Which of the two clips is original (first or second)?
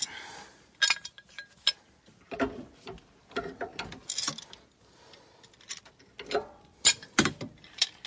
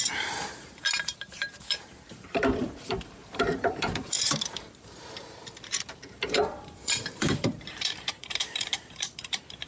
first